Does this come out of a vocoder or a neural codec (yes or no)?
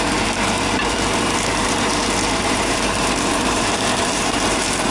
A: yes